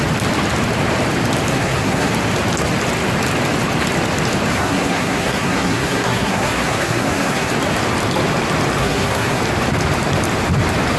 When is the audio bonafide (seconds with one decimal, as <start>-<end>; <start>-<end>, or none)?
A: 0.0-1.5; 2.1-4.5; 7.5-8.8; 9.4-11.0